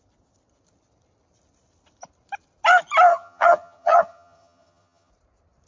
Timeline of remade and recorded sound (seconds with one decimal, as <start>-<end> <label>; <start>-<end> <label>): 0.0-3.1 recorded; 3.1-5.1 remade; 5.1-5.7 recorded